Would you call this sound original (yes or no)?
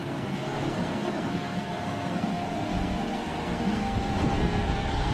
no